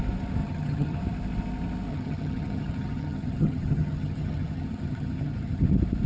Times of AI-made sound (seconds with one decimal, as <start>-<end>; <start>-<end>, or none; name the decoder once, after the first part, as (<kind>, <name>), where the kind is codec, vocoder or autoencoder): 0.4-1.0 (vocoder, HiFi-GAN); 1.9-5.6